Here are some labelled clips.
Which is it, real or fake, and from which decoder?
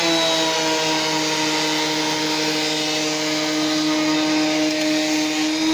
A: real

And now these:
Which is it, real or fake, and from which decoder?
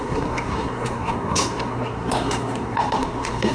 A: fake, codec, SNAC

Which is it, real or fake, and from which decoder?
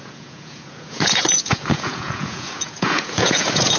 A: fake, vocoder, Vocos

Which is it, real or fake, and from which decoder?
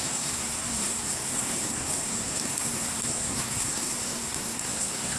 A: fake, codec, SNAC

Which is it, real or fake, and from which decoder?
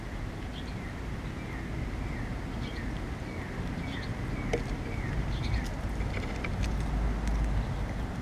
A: real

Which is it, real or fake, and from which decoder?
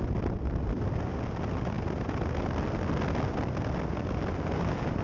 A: real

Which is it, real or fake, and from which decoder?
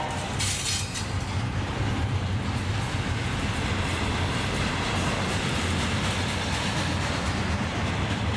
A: real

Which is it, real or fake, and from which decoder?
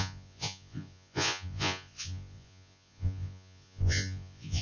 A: fake, vocoder, Vocos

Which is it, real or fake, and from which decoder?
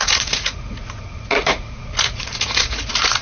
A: fake, vocoder, Vocos